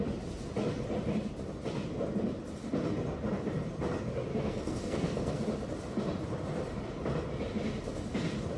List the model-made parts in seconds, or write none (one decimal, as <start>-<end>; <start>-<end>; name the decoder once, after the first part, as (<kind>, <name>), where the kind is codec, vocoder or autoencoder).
4.3-5.4 (codec, SNAC)